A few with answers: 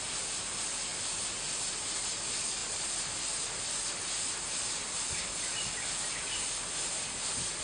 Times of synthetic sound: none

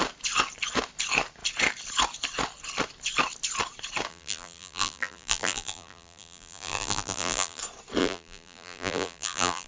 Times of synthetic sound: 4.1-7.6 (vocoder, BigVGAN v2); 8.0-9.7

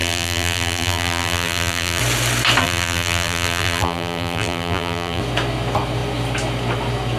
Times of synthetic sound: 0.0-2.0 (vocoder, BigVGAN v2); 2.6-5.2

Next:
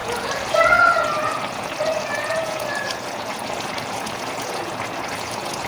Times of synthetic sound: 0.0-5.7 (vocoder, Vocos)

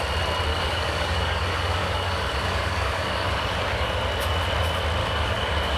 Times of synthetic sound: 0.5-4.0 (codec, DAC); 5.0-5.8

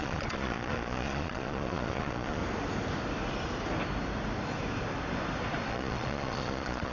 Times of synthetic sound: 0.0-2.4 (vocoder, Vocos); 5.7-6.9

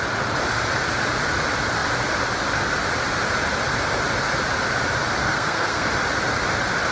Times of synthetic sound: 5.2-5.9 (codec, SNAC)

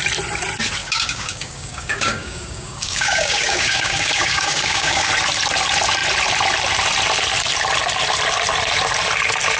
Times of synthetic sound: 0.8-5.1 (codec, DAC)